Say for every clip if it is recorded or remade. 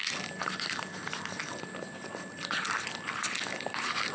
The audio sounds recorded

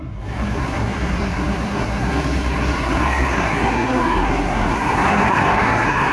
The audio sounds remade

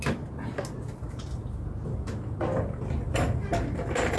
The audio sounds recorded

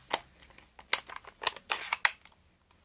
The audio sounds recorded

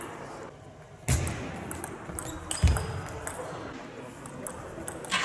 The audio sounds recorded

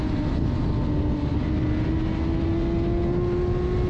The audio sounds recorded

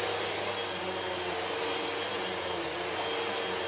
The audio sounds recorded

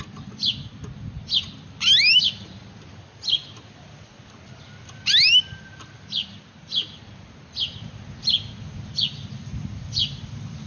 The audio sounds recorded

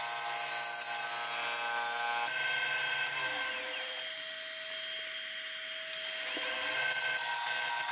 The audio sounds recorded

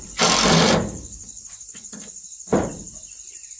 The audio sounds remade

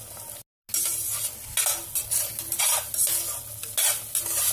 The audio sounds recorded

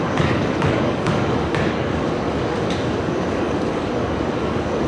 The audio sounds remade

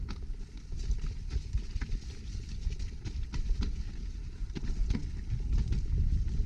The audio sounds recorded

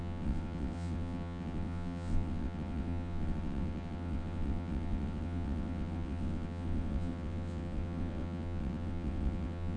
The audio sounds remade